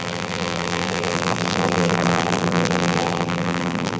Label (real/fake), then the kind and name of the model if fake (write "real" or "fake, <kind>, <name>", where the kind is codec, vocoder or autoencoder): fake, vocoder, BigVGAN v2